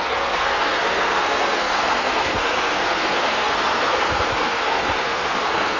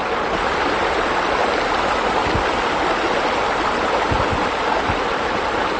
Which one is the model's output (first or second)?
first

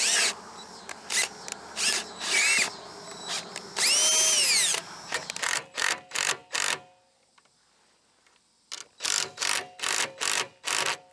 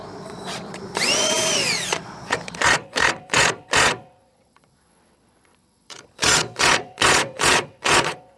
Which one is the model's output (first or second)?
second